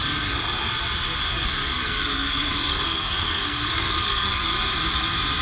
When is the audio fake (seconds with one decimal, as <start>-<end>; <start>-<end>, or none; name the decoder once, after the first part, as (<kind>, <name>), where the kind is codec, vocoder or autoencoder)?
0.0-0.7 (codec, SNAC); 1.3-4.5